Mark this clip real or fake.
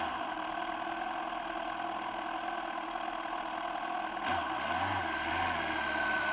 real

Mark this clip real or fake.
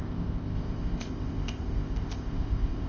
fake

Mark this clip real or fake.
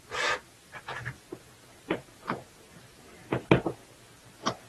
real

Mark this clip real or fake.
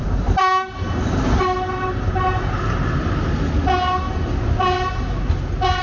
real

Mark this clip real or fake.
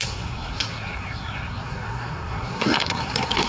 fake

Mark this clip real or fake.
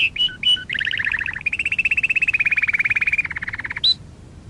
real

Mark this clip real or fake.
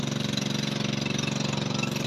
real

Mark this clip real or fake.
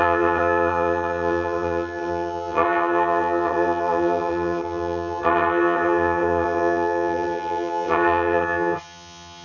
fake